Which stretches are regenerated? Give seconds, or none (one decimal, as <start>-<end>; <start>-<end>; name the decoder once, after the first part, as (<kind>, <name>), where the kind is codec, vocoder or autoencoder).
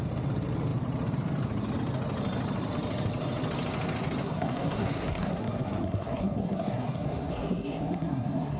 4.2-8.6 (codec, SNAC)